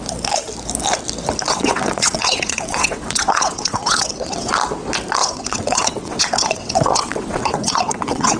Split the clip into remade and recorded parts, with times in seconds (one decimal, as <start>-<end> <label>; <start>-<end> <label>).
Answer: 0.0-1.5 recorded; 1.5-4.5 remade; 4.5-5.2 recorded; 5.2-8.4 remade